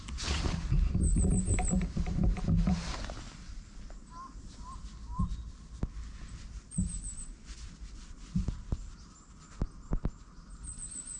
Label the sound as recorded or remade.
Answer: recorded